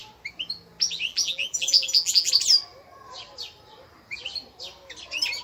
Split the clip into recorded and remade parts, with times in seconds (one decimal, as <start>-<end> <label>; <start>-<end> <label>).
0.0-1.1 recorded; 1.1-2.3 remade; 2.3-5.4 recorded